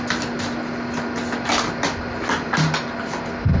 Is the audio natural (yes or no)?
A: yes